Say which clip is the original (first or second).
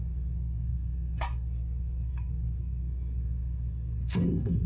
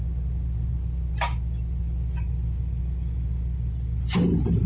second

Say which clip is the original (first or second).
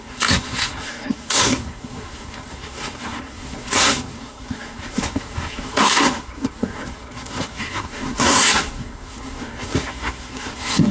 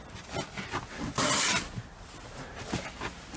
second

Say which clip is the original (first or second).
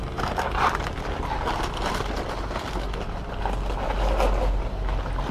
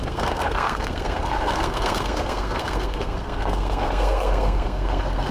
first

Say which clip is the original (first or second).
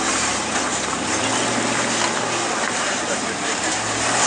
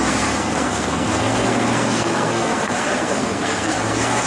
first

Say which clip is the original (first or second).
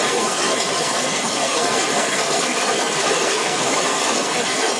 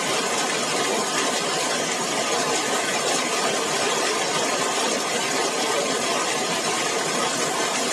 second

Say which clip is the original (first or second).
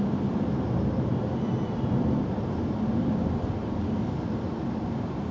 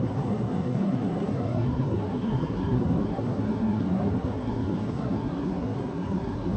first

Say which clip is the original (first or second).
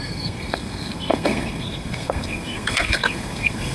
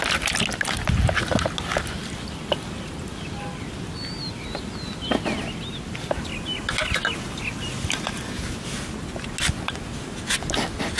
second